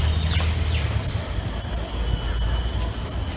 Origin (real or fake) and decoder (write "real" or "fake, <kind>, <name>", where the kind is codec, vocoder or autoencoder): real